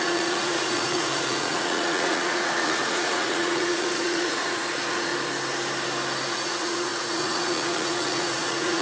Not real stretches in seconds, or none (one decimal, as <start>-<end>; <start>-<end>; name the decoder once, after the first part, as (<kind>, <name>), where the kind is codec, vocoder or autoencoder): 0.0-5.1 (vocoder, Vocos); 6.3-8.8